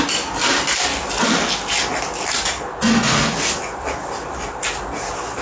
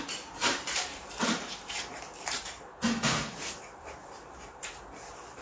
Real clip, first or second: first